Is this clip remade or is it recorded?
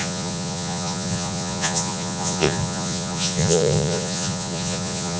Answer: remade